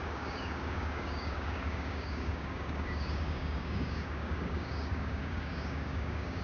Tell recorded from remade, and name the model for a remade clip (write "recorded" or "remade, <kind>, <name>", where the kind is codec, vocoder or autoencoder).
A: remade, codec, DAC